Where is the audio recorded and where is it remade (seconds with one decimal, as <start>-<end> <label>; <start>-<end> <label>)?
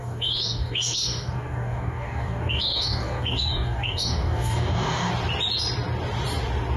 0.0-5.1 remade; 5.1-6.8 recorded